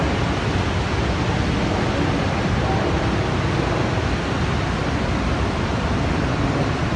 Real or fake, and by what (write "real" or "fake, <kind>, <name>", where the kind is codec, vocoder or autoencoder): real